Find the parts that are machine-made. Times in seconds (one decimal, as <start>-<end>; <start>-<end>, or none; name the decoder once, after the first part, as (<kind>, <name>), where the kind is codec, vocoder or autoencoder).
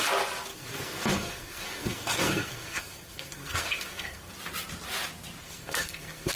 0.5-4.3 (codec, SNAC); 5.4-6.4